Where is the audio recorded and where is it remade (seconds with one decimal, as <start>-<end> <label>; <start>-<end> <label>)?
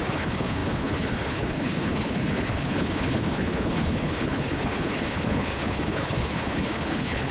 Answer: 0.0-7.3 remade